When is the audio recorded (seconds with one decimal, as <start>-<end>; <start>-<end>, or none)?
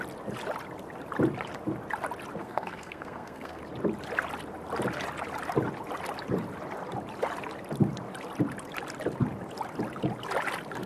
0.0-2.4; 3.6-10.9